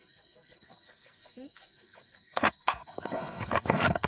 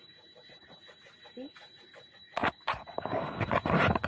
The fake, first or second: first